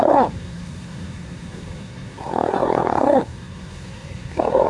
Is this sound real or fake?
fake